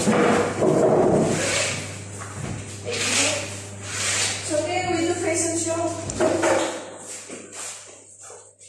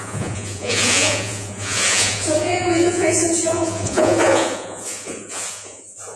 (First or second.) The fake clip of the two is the second